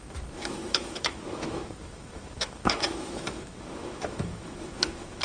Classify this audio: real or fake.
fake